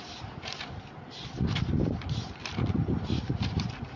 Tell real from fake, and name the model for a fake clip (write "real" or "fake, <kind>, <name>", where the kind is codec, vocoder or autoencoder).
real